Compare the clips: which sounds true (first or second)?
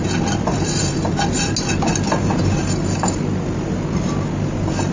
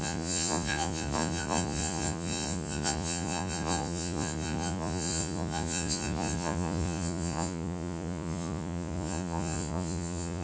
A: first